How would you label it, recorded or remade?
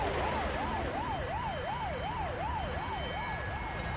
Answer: recorded